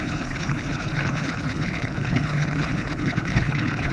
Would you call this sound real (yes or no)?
no